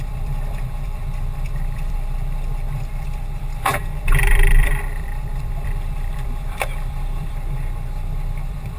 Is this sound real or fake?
fake